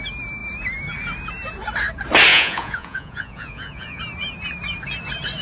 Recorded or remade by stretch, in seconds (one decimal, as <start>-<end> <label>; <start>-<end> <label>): 0.0-2.3 recorded; 2.3-4.0 remade; 4.0-5.4 recorded